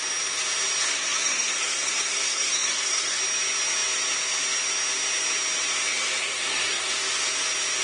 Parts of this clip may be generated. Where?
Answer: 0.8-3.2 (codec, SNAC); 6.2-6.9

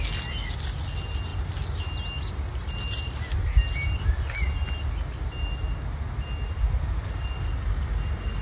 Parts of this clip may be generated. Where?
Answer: none

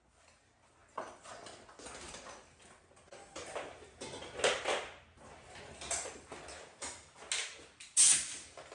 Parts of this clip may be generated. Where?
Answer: none